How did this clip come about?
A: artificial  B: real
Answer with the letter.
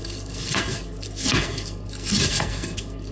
A